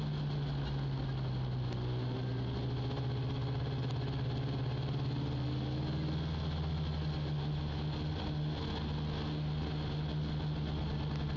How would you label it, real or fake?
real